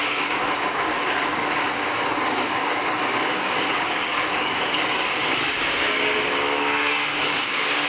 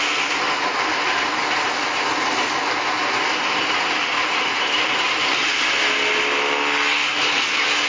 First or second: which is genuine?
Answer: second